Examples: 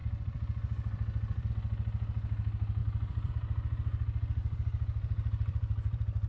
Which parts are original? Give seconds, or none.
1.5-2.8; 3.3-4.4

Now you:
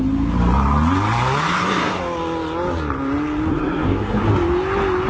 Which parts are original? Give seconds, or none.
0.0-1.4; 2.0-3.5; 4.2-5.1

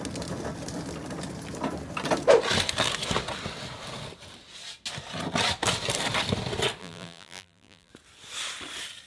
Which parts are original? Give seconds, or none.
0.0-6.8; 7.9-9.1

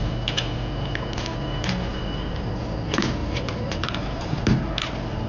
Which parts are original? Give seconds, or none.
0.0-1.9; 2.6-3.2; 4.7-5.3